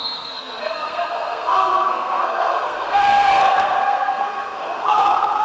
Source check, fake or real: fake